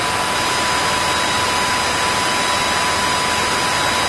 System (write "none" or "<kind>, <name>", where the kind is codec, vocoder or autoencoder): none